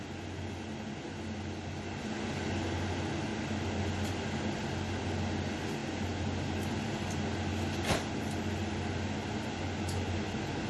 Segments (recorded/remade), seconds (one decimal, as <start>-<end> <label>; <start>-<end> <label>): 0.0-10.7 recorded